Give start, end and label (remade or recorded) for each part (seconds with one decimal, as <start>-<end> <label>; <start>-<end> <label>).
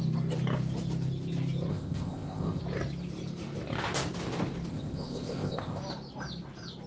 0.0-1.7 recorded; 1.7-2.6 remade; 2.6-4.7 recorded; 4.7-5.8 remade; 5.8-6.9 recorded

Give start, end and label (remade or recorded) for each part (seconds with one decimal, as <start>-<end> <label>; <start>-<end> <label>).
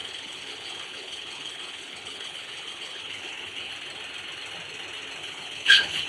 0.0-3.7 remade; 3.7-5.2 recorded; 5.2-6.1 remade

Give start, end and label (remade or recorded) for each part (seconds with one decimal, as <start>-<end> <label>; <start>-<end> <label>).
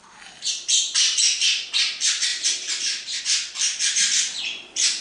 0.0-5.0 recorded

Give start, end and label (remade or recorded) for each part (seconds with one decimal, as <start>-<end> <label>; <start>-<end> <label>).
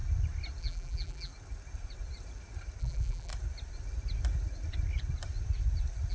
0.0-0.6 recorded; 0.6-1.3 remade; 1.3-2.8 recorded; 2.8-3.3 remade; 3.3-6.1 recorded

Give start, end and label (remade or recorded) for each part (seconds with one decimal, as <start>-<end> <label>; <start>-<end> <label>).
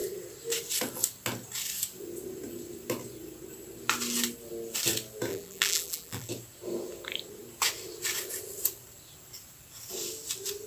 0.0-5.3 recorded; 5.3-6.3 remade; 6.3-10.7 recorded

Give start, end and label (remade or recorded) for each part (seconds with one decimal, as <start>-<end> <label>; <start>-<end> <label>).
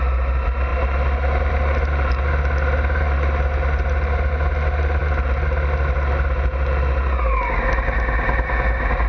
0.0-9.1 recorded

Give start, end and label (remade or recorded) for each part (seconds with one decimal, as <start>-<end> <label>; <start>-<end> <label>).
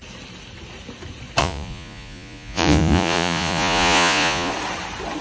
0.0-1.4 recorded; 1.4-4.5 remade; 4.5-5.2 recorded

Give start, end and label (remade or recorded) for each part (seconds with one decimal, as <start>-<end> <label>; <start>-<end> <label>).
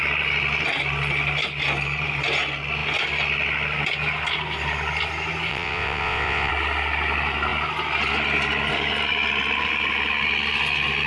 0.0-5.5 recorded; 5.5-6.5 remade; 6.5-11.1 recorded